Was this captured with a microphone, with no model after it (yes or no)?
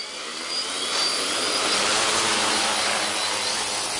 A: yes